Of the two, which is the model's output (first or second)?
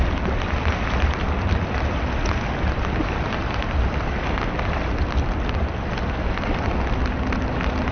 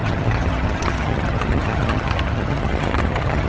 second